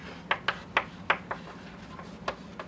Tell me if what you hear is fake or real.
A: real